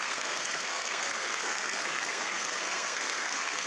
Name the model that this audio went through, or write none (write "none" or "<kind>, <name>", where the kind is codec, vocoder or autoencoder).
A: codec, SNAC